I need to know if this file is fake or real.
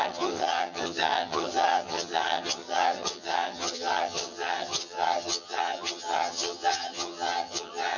fake